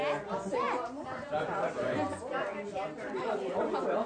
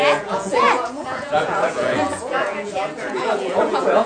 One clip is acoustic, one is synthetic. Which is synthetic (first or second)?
second